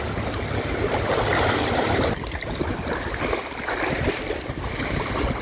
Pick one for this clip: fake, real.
real